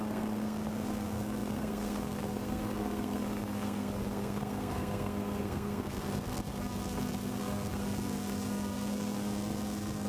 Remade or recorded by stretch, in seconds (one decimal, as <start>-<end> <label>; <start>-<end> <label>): 0.0-10.1 remade